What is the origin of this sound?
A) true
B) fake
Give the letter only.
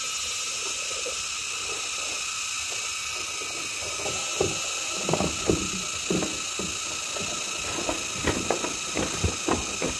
A